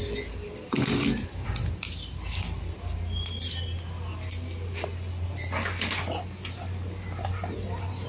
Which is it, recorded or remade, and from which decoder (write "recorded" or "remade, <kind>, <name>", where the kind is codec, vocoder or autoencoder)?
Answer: recorded